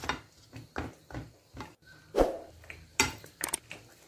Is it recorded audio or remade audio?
recorded